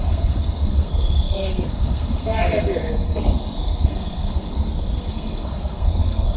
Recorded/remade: remade